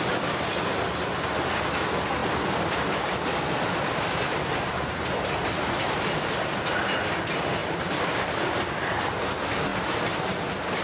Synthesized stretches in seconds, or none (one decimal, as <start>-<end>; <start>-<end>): 2.2-4.5; 7.6-9.2